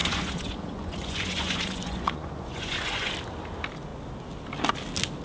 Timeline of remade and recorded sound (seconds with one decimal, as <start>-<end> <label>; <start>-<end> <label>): 0.0-3.1 remade; 3.1-5.2 recorded